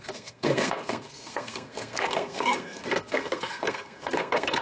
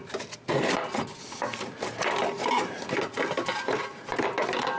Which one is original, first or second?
second